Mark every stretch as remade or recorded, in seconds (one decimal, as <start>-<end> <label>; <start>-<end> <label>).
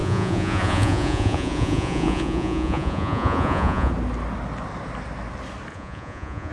0.0-3.9 remade; 3.9-5.7 recorded; 5.7-6.5 remade